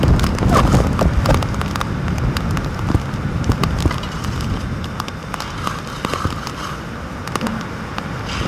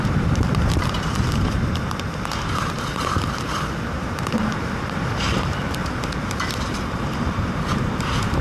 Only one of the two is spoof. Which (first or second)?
second